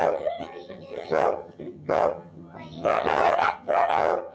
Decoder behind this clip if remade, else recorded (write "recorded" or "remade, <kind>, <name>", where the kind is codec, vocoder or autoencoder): remade, vocoder, HiFi-GAN